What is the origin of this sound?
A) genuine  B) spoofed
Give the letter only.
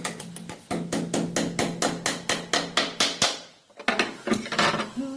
A